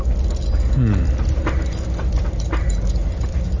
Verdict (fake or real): real